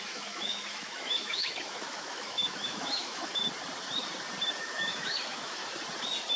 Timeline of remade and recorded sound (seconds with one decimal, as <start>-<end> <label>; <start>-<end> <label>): 0.0-3.4 remade; 3.4-4.6 recorded; 4.6-5.6 remade; 5.6-6.4 recorded